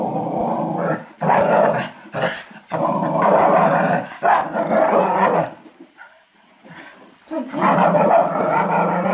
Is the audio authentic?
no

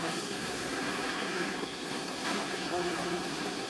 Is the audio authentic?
no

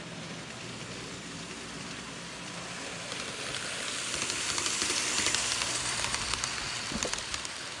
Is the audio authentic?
no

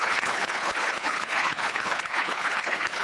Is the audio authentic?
no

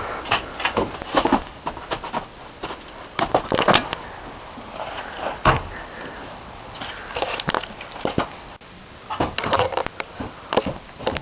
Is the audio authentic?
yes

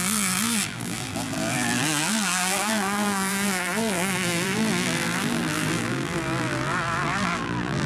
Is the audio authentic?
no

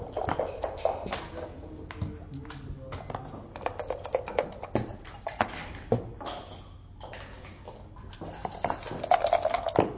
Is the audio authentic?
yes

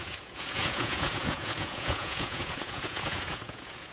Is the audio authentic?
no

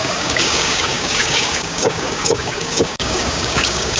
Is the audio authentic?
no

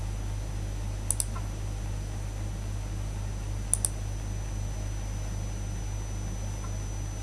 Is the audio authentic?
yes